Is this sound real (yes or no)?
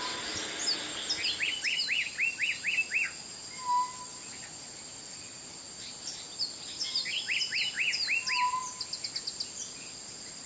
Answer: yes